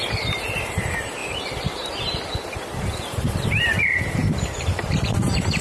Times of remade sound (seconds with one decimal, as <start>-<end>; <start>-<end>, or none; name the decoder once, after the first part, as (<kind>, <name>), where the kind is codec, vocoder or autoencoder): 0.0-5.6 (vocoder, BigVGAN v2)